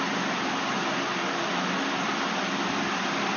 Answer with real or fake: real